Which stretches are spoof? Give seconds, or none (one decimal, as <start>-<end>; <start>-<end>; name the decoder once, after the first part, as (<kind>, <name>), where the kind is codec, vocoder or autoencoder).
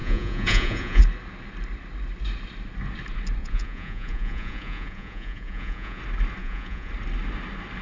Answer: 0.0-1.0 (vocoder, Vocos); 3.4-6.0; 6.4-6.9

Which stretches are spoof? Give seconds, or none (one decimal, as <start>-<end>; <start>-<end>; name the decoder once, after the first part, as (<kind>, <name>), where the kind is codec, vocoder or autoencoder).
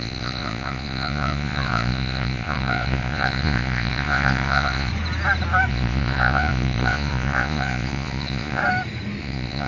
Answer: 0.0-4.9 (vocoder, Vocos); 5.7-8.6; 9.2-9.7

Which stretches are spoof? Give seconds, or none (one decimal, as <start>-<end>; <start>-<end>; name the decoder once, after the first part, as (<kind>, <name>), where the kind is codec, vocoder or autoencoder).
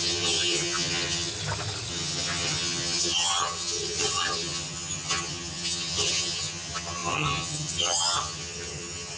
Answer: 0.0-1.3 (vocoder, HiFi-GAN); 1.9-9.2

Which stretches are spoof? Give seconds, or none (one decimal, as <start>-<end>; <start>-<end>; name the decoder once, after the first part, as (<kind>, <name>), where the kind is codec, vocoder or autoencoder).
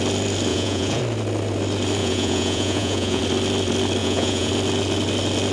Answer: 0.5-1.0 (vocoder, Vocos); 2.0-3.2; 4.0-4.5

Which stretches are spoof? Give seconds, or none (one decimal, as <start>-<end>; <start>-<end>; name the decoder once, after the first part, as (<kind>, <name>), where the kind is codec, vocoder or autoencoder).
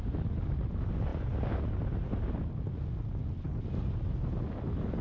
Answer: none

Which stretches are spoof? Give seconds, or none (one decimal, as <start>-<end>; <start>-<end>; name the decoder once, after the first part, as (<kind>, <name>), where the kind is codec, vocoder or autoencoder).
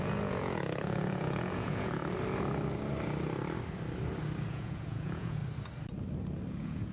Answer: 0.0-2.0 (vocoder, Vocos); 4.5-5.4; 6.5-6.9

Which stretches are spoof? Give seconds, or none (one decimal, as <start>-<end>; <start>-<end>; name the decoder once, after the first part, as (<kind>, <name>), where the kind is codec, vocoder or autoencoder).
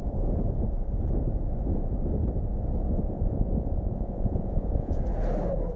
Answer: 3.1-5.0 (vocoder, Vocos)